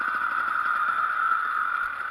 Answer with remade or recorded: recorded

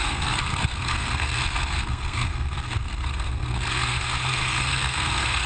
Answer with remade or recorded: remade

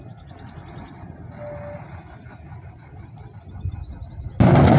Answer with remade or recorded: recorded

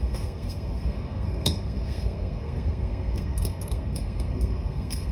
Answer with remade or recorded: remade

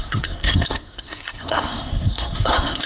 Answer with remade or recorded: remade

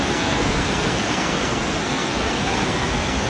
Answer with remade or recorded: remade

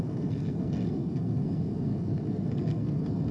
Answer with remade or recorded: remade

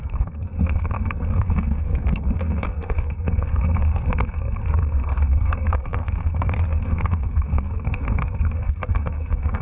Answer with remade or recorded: remade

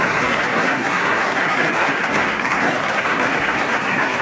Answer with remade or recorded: remade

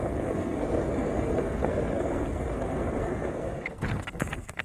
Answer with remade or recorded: remade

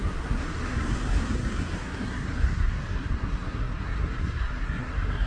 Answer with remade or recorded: remade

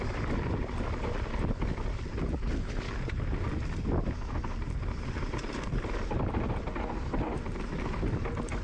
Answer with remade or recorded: recorded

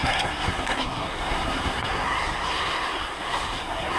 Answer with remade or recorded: remade